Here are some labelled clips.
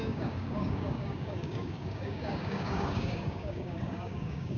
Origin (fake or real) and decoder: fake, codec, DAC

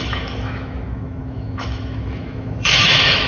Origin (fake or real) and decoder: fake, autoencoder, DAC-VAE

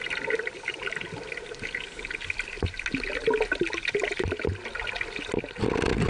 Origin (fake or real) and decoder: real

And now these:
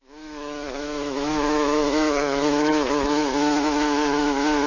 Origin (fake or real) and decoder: fake, autoencoder, DAC-VAE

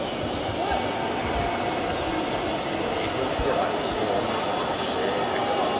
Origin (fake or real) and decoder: real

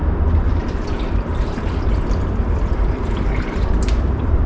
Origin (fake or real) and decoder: real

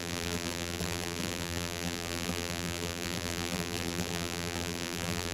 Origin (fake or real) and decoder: fake, vocoder, BigVGAN v2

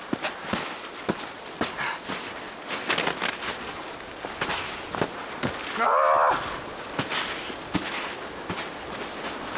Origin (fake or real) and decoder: real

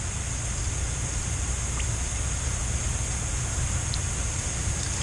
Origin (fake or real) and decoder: fake, vocoder, BigVGAN v2